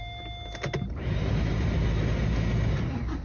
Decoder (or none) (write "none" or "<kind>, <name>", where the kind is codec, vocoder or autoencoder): none